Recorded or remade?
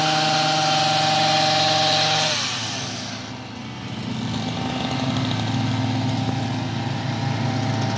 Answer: recorded